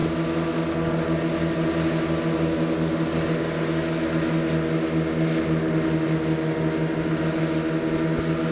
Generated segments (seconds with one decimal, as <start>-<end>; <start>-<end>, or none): none